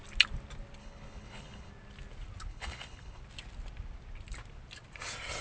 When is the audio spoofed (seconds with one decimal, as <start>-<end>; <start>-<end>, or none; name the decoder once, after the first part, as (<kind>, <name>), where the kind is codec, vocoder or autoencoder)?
0.8-1.7 (codec, HILCodec); 2.5-3.2